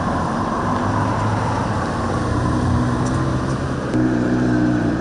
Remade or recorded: remade